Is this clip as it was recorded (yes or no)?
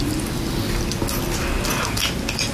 yes